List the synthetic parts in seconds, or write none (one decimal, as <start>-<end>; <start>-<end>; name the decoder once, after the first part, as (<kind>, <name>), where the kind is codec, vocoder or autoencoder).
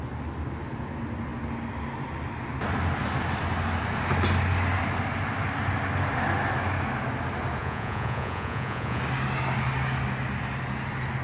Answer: 7.6-9.0 (vocoder, Vocos)